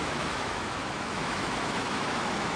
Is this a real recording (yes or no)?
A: no